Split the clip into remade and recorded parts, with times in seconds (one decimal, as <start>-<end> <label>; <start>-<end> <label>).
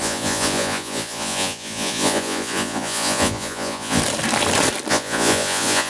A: 0.0-4.0 remade; 4.0-4.9 recorded; 4.9-5.9 remade